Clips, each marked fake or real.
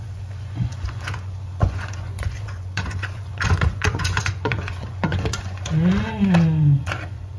fake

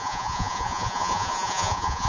fake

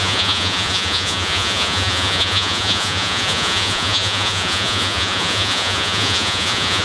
fake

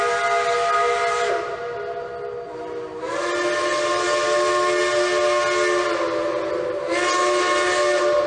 real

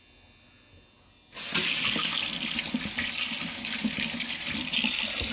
real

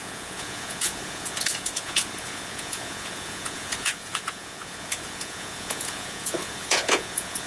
fake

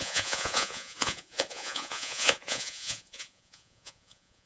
fake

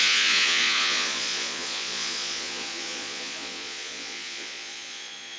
fake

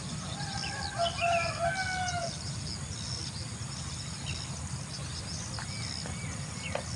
real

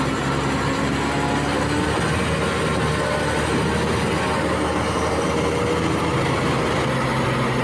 real